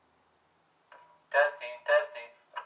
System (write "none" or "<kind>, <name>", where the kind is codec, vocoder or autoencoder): none